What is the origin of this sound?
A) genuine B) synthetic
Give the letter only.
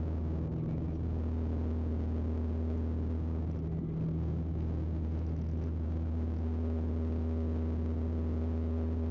A